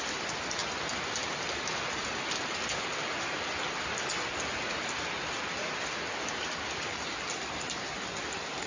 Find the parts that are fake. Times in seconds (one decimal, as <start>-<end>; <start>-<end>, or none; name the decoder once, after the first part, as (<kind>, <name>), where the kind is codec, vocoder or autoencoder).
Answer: none